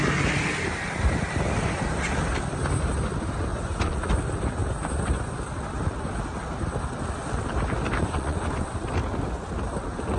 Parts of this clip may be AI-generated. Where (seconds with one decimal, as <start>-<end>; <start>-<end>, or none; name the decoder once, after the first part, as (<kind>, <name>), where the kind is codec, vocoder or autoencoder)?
3.5-4.1 (vocoder, Vocos); 8.0-8.7